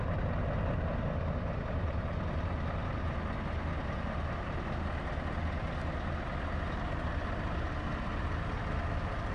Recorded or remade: recorded